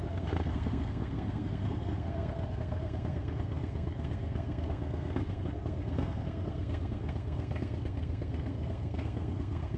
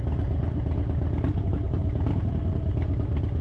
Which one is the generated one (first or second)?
first